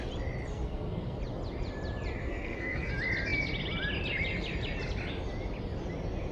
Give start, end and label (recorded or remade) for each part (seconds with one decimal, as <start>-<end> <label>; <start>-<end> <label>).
0.0-0.5 recorded; 0.5-1.2 remade; 1.2-2.2 recorded; 2.2-2.9 remade; 2.9-6.3 recorded